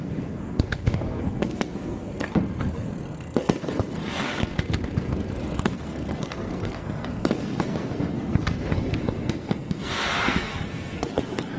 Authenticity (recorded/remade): remade